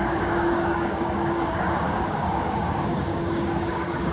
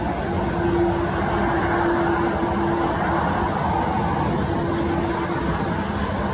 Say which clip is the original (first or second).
second